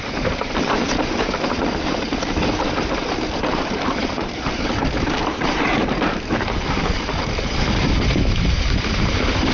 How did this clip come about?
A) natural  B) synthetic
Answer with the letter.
B